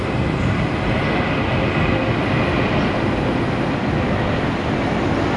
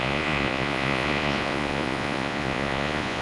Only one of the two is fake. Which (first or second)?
second